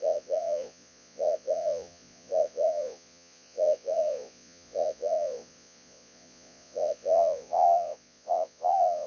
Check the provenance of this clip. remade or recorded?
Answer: remade